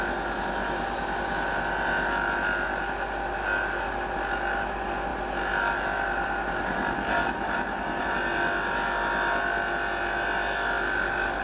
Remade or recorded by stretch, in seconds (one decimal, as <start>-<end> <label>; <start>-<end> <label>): 0.0-11.4 recorded